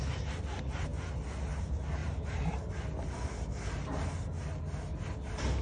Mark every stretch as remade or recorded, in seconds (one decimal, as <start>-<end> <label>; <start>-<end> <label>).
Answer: 0.0-5.6 recorded